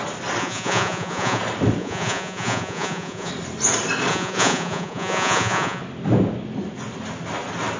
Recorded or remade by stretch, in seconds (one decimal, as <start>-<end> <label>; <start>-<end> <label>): 0.0-0.4 recorded; 0.4-1.4 remade; 1.4-1.8 recorded; 1.8-3.3 remade; 3.3-4.1 recorded; 4.1-5.8 remade; 5.8-7.8 recorded